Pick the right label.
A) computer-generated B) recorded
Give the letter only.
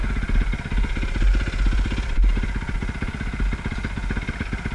B